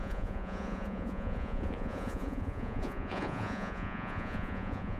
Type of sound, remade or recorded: remade